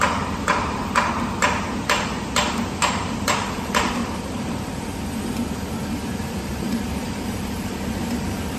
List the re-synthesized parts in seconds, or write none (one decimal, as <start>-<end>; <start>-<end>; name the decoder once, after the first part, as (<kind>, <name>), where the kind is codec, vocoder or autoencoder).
0.0-0.8 (vocoder, BigVGAN v2); 2.9-4.0; 6.7-8.6